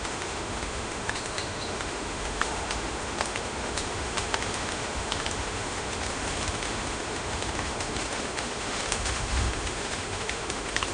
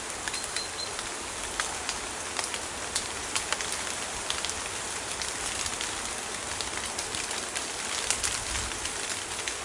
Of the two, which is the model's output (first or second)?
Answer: first